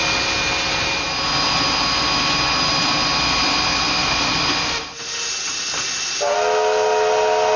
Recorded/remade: recorded